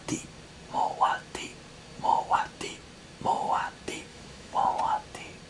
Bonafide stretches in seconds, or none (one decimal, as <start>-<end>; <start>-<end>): 0.0-4.1; 4.6-5.5